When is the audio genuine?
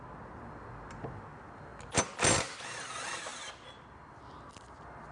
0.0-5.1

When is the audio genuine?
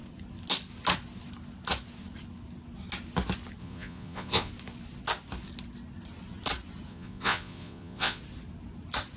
0.0-3.6; 4.5-6.9; 8.2-9.2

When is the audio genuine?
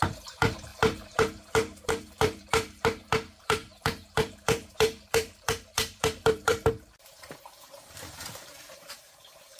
none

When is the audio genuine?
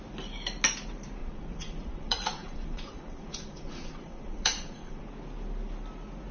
0.0-1.2; 5.0-6.3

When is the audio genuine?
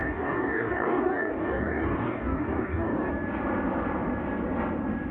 3.1-5.1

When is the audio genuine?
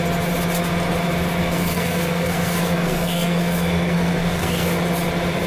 0.0-1.4; 4.7-5.5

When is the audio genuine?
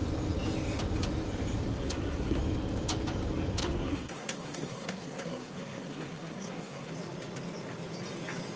0.0-1.7; 2.4-3.6; 6.9-8.6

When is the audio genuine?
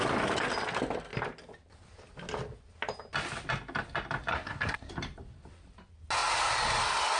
0.0-4.3; 4.9-7.2